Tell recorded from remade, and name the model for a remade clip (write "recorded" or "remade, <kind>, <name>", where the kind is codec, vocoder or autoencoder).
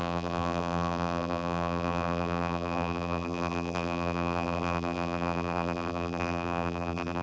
remade, vocoder, BigVGAN v2